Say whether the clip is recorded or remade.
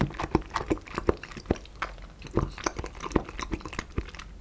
recorded